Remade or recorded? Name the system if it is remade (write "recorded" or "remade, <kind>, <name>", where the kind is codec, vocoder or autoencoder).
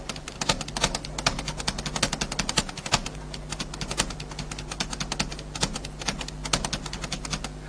recorded